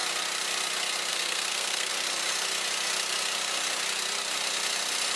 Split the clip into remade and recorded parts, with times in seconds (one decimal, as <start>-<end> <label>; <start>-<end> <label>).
0.0-1.1 recorded; 1.1-1.9 remade; 1.9-5.2 recorded